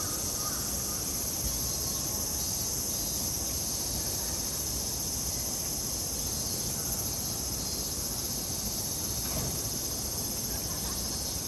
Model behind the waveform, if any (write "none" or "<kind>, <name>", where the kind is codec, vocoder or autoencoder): none